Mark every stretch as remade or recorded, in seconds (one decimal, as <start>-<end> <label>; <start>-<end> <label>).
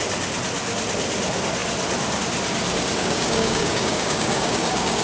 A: 0.0-3.0 recorded; 3.0-5.0 remade